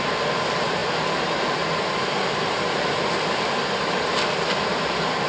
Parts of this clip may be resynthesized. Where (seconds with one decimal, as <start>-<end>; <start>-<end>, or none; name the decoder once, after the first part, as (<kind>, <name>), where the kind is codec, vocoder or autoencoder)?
none